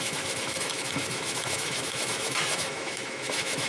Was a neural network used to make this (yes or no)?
yes